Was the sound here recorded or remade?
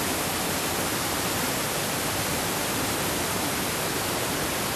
recorded